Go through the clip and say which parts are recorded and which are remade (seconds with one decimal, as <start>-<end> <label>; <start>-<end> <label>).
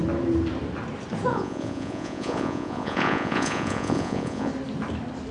0.0-1.3 recorded; 1.3-4.5 remade; 4.5-5.3 recorded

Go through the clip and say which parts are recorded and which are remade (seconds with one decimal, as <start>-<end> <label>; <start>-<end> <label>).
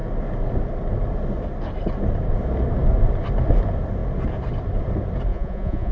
0.0-5.3 recorded; 5.3-5.9 remade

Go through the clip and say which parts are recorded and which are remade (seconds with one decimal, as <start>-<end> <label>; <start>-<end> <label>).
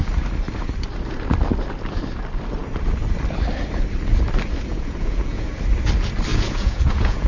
0.0-4.7 recorded; 4.7-5.5 remade; 5.5-6.3 recorded; 6.3-7.3 remade